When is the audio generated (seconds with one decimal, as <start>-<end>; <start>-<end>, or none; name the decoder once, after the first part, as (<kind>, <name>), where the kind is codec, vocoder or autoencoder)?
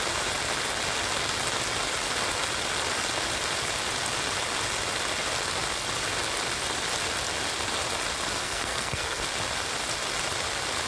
8.4-9.2 (codec, SNAC)